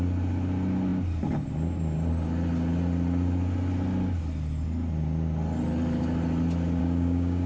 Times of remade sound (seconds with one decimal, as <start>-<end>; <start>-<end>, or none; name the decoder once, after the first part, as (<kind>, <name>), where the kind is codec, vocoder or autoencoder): 6.8-7.5 (codec, DAC)